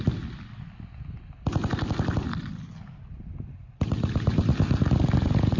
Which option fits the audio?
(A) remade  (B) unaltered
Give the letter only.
B